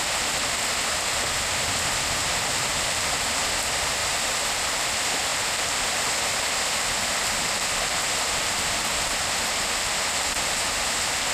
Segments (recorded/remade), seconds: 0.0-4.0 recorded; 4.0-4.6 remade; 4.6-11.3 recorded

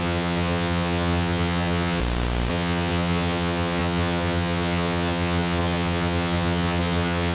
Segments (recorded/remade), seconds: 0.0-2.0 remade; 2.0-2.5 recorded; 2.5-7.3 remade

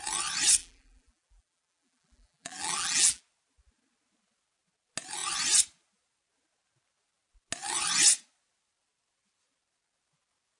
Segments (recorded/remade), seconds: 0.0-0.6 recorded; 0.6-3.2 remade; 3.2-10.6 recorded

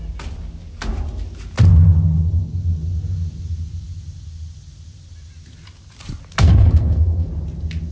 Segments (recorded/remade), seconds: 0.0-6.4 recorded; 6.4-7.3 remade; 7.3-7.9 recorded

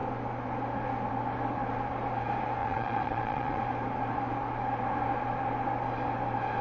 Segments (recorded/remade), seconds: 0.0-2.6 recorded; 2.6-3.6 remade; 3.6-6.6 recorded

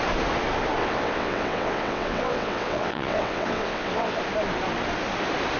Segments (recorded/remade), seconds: 0.0-0.8 recorded; 0.8-4.2 remade; 4.2-5.6 recorded